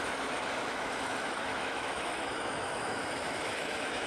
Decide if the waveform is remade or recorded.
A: remade